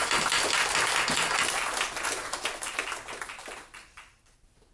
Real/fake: real